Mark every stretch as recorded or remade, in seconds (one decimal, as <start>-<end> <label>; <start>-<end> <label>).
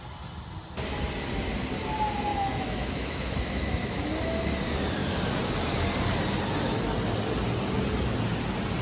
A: 0.0-2.3 recorded; 2.3-4.1 remade; 4.1-8.8 recorded